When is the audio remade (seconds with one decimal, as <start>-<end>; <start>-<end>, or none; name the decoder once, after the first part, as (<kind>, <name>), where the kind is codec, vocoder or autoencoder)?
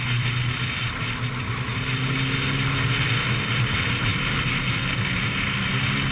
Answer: 0.0-1.7 (vocoder, BigVGAN v2); 3.6-6.1